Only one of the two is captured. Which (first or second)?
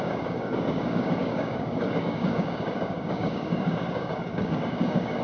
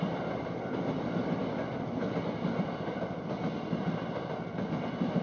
second